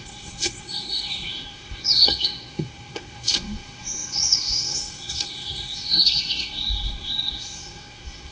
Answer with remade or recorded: remade